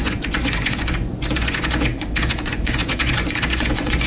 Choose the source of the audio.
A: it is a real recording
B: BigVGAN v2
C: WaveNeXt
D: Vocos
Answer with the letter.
D